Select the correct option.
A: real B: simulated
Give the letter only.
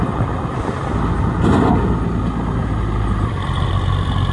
A